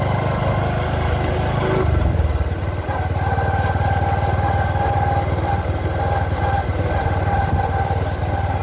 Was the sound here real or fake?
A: real